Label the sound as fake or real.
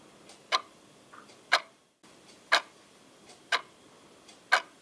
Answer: real